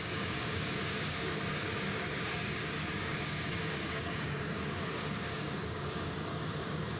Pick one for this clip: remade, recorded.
remade